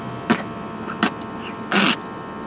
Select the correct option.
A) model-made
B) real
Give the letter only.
B